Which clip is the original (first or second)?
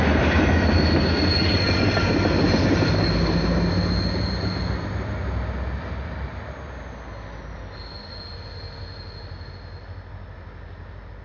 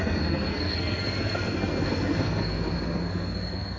first